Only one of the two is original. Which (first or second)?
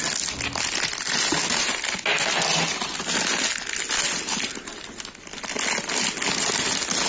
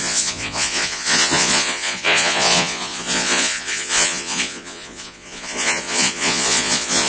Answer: first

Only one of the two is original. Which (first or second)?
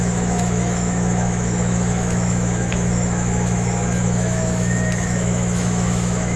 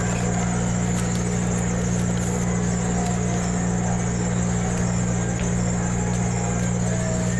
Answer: second